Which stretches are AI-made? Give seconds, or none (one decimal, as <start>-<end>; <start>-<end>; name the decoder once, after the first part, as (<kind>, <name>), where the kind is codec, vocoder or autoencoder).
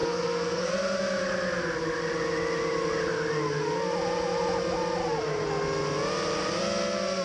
0.0-0.7 (codec, SNAC)